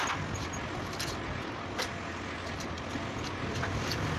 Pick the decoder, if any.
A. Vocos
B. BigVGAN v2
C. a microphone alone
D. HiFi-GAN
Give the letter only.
C